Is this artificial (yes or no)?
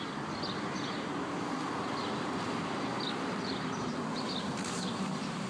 no